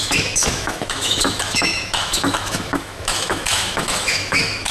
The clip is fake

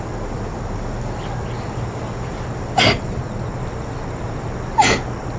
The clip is real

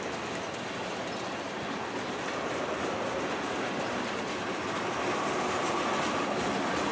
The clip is real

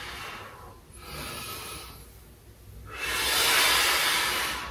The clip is real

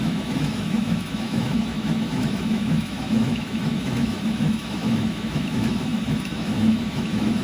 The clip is fake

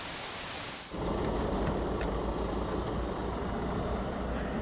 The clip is real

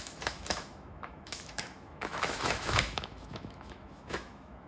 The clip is fake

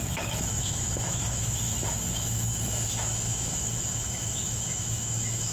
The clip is fake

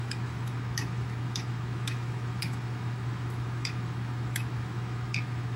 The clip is fake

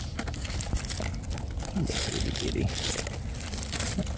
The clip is real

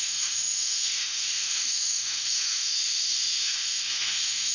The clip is fake